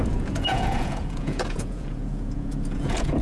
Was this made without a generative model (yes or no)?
no